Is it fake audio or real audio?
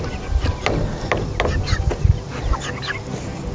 real